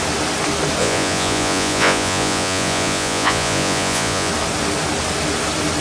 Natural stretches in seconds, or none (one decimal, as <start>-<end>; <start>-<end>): 0.0-0.8; 4.3-5.8